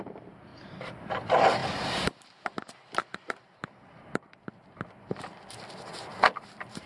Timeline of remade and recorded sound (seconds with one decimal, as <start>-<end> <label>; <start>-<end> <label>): 0.0-1.6 remade; 1.6-5.7 recorded; 5.7-6.9 remade